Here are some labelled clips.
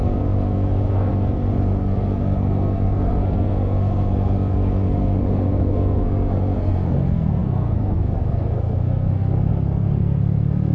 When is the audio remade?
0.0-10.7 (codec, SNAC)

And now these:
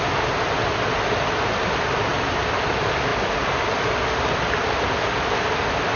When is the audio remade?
none

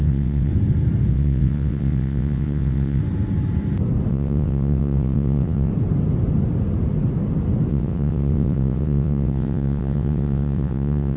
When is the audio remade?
0.0-0.5 (vocoder, WaveNeXt); 1.1-3.0; 4.1-5.7; 7.7-11.2

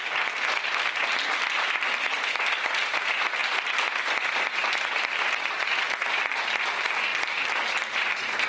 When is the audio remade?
3.4-5.6 (vocoder, BigVGAN v2)

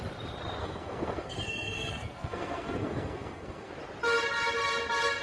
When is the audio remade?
0.6-3.7 (codec, SNAC)

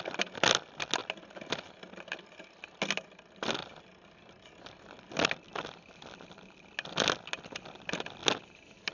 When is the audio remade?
none

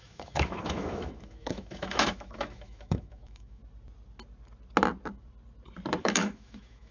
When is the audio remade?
0.0-3.6 (autoencoder, DAC-VAE); 6.0-6.9

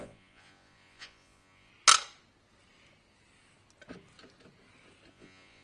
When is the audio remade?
0.0-1.7 (vocoder, Vocos); 5.1-5.6